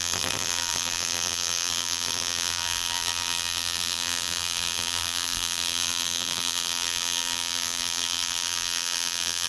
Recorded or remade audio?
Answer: remade